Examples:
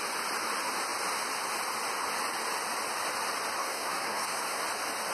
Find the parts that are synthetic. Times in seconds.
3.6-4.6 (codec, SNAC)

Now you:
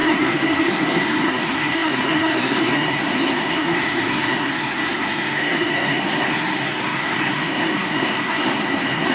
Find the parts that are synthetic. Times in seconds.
0.0-9.1 (codec, SNAC)

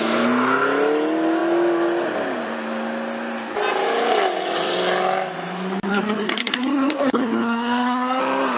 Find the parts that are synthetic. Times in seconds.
5.9-8.2 (codec, SNAC)

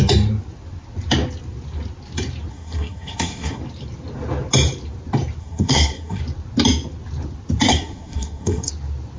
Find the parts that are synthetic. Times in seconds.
2.5-3.6 (codec, SNAC); 5.4-6.2; 7.7-8.7

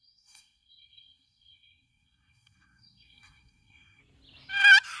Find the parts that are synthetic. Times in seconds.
0.0-4.0 (codec, SNAC)

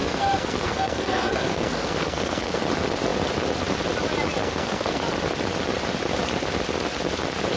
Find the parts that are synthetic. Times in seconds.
0.0-2.6 (codec, SNAC); 4.4-5.0

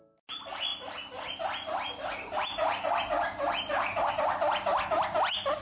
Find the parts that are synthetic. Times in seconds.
none

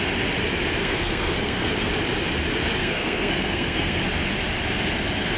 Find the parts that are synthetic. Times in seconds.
0.8-1.9 (codec, SNAC); 2.8-4.0